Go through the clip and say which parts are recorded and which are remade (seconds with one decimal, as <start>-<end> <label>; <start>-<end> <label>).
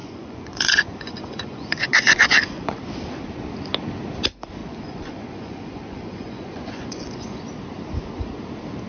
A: 0.0-2.8 remade; 2.8-4.6 recorded; 4.6-7.4 remade; 7.4-8.9 recorded